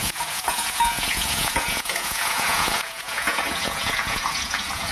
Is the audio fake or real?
fake